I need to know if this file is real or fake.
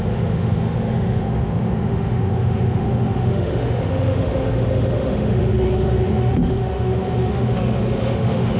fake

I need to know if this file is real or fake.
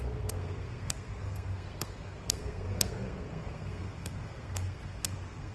fake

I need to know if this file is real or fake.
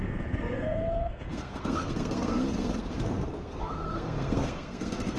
fake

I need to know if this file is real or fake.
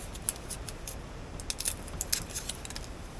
real